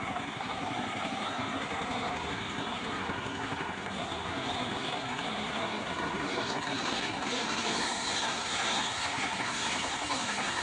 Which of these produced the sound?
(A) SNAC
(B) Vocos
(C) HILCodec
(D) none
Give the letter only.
A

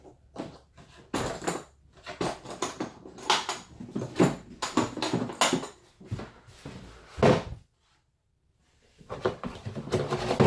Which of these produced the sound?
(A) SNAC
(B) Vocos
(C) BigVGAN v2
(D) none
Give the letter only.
D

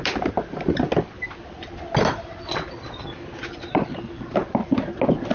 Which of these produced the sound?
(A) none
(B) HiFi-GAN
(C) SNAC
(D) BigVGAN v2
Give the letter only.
A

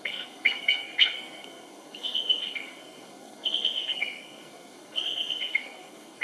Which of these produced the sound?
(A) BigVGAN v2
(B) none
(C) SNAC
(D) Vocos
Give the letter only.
C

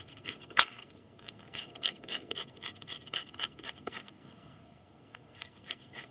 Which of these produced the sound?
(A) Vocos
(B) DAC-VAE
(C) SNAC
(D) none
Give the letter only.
C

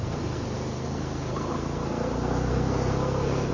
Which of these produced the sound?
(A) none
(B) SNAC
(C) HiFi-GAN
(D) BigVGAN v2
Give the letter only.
B